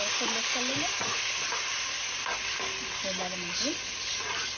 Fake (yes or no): no